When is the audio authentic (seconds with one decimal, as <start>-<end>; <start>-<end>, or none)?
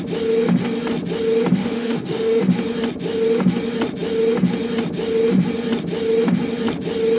0.0-1.6; 2.4-7.2